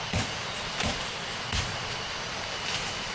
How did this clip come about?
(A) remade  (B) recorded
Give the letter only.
B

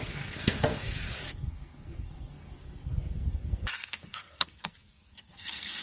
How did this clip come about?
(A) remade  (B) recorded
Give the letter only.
A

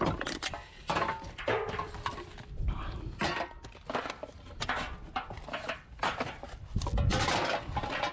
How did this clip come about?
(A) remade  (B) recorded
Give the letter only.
B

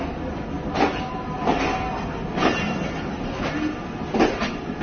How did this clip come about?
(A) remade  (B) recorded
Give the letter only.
B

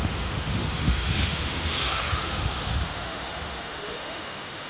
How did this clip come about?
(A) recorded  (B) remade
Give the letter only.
B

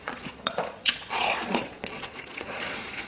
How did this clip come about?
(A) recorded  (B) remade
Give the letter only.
B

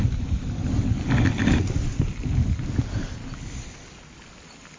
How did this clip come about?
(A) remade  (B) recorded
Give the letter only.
B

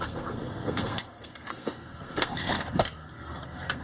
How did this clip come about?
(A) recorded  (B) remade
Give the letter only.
B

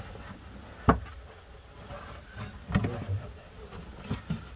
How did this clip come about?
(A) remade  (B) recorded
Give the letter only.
B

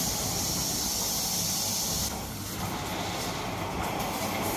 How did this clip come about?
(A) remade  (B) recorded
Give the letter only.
B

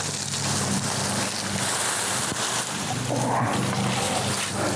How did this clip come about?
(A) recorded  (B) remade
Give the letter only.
A